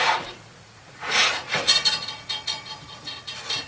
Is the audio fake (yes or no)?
yes